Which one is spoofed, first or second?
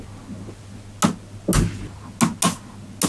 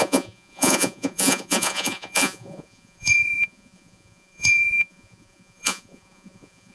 second